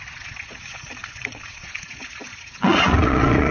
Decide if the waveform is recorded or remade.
remade